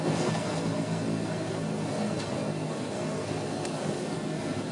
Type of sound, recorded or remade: remade